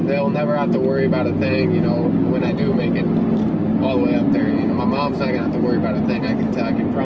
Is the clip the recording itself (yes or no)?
yes